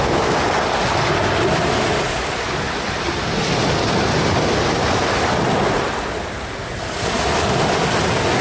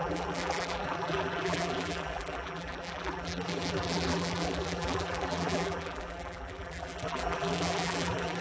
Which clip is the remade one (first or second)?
second